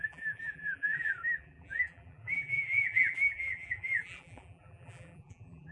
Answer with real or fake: fake